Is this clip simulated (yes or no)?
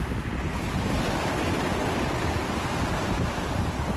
no